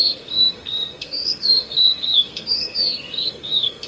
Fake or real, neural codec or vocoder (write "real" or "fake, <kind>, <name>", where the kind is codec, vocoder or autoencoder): fake, codec, SNAC